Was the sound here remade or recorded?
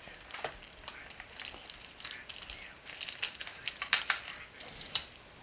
recorded